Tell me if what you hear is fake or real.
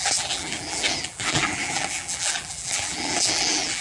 fake